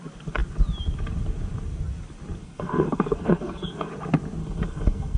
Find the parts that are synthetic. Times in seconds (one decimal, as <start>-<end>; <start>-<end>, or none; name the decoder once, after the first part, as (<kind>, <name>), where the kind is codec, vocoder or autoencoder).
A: 2.4-3.9 (codec, SNAC); 4.4-5.2